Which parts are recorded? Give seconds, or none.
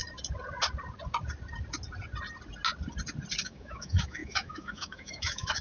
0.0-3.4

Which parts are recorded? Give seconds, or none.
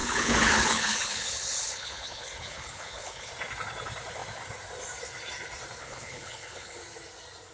3.3-5.8; 6.8-7.5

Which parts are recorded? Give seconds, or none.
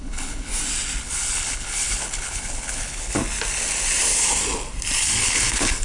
0.5-1.0; 3.2-5.2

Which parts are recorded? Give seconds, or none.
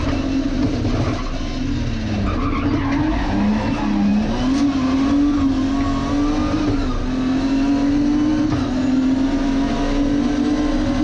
0.0-11.0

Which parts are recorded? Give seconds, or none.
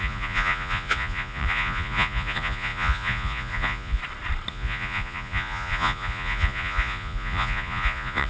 4.0-4.5